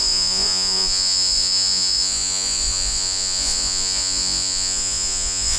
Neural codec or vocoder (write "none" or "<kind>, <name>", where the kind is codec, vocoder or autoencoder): vocoder, Vocos